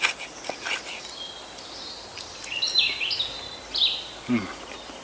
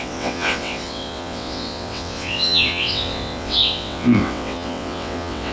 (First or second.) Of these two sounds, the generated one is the second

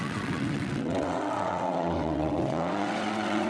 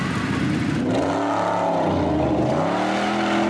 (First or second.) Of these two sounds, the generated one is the first